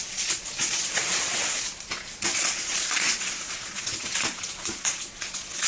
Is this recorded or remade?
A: remade